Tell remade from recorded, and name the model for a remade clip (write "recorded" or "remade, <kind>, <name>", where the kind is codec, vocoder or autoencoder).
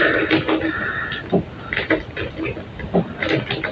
recorded